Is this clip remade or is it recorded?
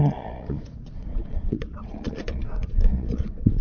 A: remade